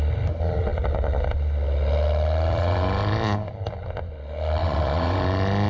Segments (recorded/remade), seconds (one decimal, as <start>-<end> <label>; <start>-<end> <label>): 0.0-4.6 recorded; 4.6-5.2 remade; 5.2-5.7 recorded